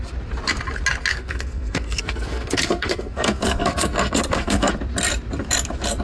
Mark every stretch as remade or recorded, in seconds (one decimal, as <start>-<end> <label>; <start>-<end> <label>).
0.0-1.1 recorded; 1.1-4.7 remade; 4.7-6.0 recorded